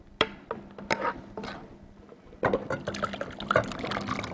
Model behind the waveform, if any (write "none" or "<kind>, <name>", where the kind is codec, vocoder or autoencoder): none